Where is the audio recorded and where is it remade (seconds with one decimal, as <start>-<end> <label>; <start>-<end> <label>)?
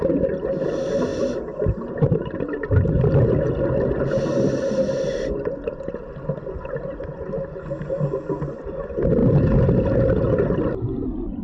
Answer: 0.0-11.4 recorded